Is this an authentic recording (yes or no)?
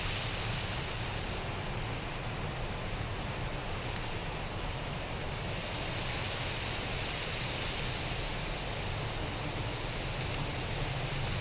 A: yes